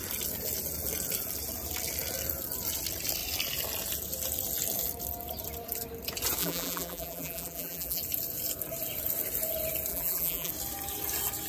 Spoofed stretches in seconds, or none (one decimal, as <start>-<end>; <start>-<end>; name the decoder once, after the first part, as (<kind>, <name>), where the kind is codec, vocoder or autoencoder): 6.4-8.0 (vocoder, BigVGAN v2); 9.9-10.5